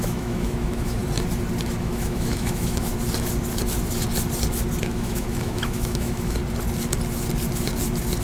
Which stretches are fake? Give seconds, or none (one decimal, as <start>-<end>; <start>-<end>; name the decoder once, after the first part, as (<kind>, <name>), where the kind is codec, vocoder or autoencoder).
0.0-1.0 (autoencoder, DAC-VAE); 1.8-2.9; 4.8-6.4